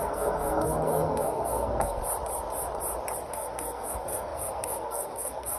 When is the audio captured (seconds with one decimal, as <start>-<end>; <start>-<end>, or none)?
2.0-3.3